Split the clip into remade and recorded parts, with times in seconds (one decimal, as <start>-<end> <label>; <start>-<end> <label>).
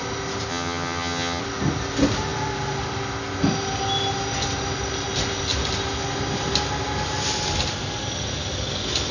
0.0-0.5 recorded; 0.5-1.4 remade; 1.4-9.1 recorded